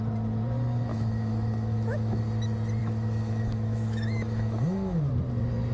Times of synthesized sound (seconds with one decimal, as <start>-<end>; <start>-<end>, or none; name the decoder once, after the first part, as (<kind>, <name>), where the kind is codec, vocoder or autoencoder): 0.9-2.2 (autoencoder, DAC-VAE); 2.8-5.1